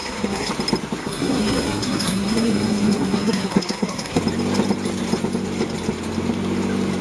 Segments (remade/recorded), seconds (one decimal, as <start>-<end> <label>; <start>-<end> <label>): 0.0-0.5 remade; 0.5-1.0 recorded; 1.0-4.2 remade; 4.2-7.0 recorded